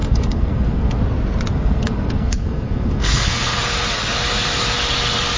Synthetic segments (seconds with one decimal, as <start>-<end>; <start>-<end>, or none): 0.0-1.0; 1.5-3.6